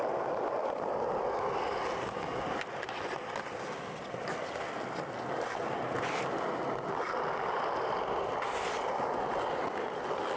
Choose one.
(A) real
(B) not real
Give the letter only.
A